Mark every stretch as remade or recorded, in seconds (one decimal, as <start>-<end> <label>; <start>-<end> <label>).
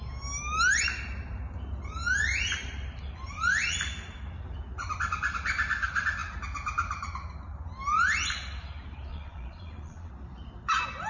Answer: 0.0-9.1 recorded; 9.1-10.1 remade; 10.1-11.1 recorded